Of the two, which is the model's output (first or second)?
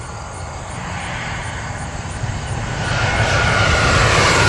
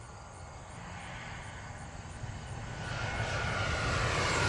first